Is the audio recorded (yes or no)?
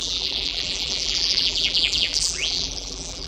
no